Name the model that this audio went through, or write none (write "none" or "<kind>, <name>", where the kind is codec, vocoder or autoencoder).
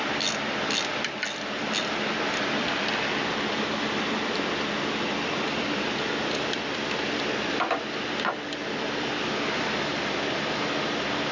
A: none